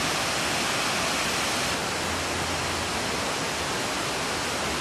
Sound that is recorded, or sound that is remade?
recorded